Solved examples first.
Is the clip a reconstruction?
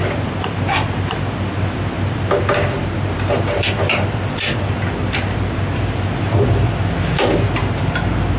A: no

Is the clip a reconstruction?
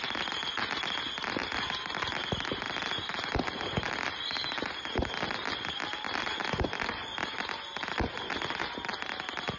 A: no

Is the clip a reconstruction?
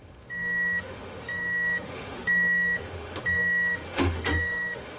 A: yes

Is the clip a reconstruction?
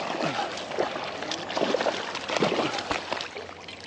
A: no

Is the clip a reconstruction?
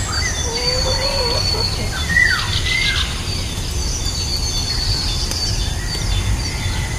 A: no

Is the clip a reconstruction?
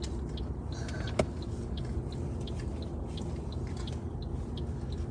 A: no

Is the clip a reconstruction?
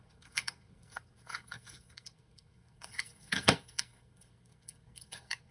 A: yes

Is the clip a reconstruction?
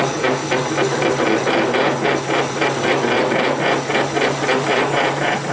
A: no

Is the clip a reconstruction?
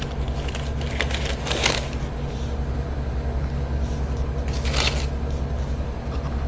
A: no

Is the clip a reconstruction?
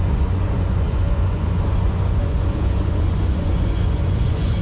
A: yes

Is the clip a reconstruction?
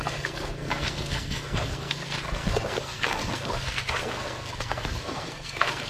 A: yes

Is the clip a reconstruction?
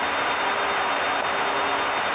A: no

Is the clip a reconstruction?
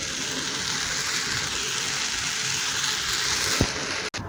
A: no